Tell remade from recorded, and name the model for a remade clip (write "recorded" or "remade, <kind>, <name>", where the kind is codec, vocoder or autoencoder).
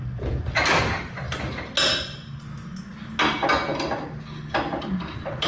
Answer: recorded